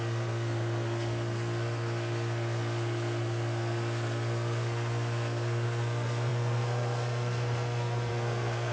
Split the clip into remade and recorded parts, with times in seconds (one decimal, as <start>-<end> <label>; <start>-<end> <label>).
0.0-8.7 remade